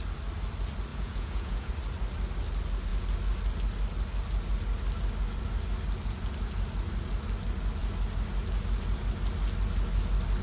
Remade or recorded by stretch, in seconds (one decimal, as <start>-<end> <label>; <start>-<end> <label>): 0.0-0.9 recorded; 0.9-1.7 remade; 1.7-10.4 recorded